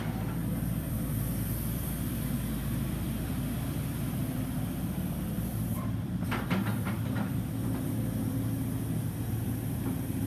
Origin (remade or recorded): remade